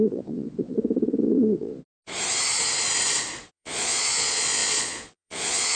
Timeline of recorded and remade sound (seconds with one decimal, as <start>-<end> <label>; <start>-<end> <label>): 0.0-1.7 remade; 1.7-3.5 recorded; 3.5-5.8 remade